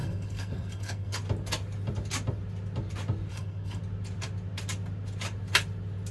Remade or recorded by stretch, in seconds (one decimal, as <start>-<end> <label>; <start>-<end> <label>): 0.0-1.2 remade; 1.2-3.3 recorded; 3.3-3.8 remade; 3.8-6.1 recorded